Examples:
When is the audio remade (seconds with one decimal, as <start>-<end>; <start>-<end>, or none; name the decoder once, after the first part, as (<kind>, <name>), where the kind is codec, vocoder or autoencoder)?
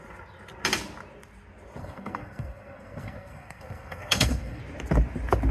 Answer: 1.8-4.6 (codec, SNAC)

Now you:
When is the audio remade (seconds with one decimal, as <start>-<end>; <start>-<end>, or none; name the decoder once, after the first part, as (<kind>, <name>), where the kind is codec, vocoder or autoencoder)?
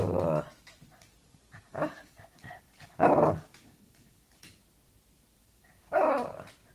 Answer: 1.7-4.3 (codec, DAC); 5.4-6.1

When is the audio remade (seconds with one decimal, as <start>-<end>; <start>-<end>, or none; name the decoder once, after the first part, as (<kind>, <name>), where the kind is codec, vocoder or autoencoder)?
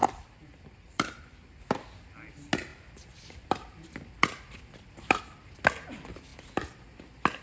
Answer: 0.0-1.6 (vocoder, BigVGAN v2); 2.7-5.2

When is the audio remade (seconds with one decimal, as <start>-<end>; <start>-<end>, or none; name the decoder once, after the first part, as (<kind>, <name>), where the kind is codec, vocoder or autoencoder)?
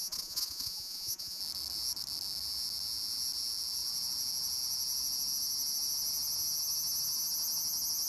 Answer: 0.0-1.4 (vocoder, Vocos)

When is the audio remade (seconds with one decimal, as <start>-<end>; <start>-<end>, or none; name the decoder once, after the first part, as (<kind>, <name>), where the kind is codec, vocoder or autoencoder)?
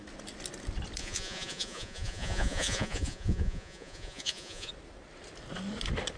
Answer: 1.0-4.7 (vocoder, Vocos)